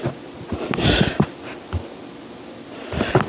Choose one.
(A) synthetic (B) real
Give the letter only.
B